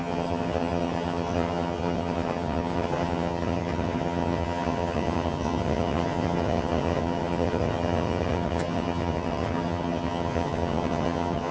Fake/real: fake